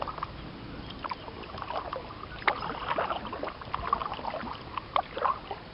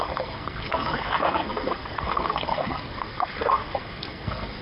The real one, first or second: first